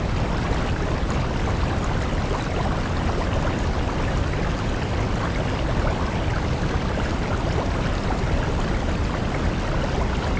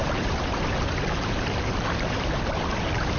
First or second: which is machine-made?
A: second